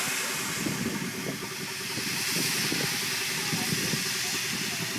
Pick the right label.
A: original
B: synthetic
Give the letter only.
A